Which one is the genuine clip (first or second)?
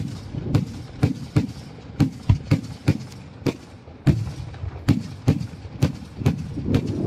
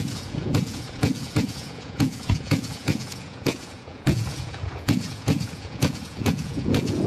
first